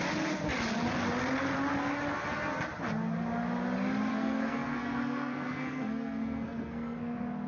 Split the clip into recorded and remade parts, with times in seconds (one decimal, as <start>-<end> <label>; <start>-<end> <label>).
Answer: 0.0-4.1 recorded; 4.1-7.5 remade